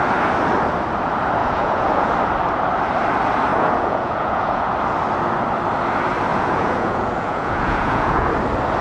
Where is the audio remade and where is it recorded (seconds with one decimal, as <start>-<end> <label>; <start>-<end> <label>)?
0.0-1.4 recorded; 1.4-2.1 remade; 2.1-3.5 recorded; 3.5-4.7 remade; 4.7-6.3 recorded; 6.3-8.3 remade; 8.3-8.8 recorded